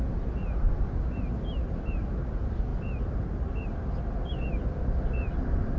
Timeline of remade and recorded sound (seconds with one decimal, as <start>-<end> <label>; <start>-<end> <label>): 0.0-5.8 recorded